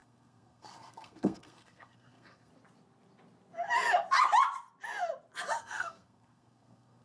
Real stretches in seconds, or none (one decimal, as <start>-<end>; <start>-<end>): 2.5-5.6